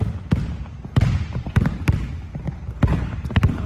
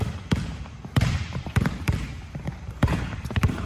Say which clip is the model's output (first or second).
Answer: second